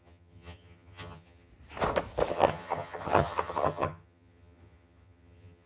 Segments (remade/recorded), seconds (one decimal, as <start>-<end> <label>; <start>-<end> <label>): 0.0-1.5 remade; 1.5-2.3 recorded; 2.3-5.7 remade